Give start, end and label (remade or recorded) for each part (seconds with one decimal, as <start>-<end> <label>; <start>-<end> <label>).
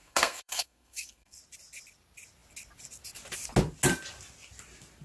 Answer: 0.0-1.4 remade; 1.4-5.0 recorded